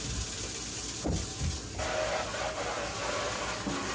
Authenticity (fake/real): real